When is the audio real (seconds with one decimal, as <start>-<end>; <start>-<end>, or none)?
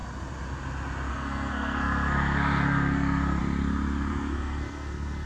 0.0-1.1; 3.4-4.1